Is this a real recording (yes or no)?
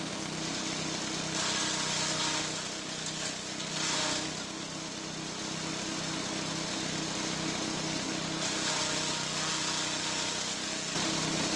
yes